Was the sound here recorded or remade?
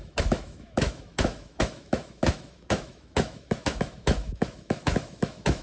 remade